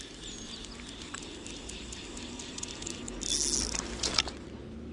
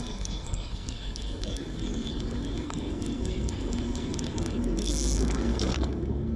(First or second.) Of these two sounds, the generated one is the second